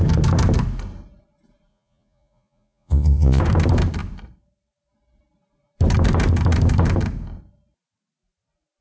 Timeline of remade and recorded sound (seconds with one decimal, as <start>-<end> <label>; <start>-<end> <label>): 0.0-1.7 recorded; 1.7-3.4 remade; 3.4-8.8 recorded